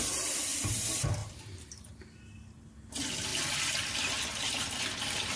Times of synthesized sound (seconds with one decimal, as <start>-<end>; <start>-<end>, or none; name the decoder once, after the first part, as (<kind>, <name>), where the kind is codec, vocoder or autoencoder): 1.2-1.9 (vocoder, BigVGAN v2)